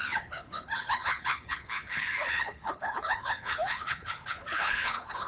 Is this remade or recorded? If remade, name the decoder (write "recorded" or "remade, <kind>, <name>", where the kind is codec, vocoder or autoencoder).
remade, codec, HILCodec